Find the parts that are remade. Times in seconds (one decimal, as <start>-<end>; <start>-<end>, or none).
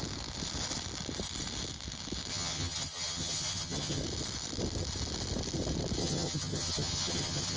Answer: 2.3-4.0; 6.0-7.6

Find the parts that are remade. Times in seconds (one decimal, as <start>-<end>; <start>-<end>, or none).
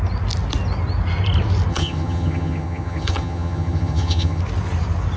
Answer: 1.7-4.4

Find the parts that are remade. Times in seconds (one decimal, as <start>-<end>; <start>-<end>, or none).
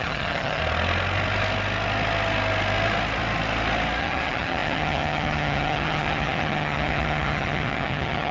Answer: 0.0-0.6; 4.0-8.3